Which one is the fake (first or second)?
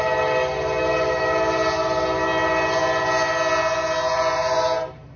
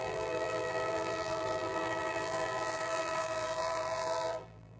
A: second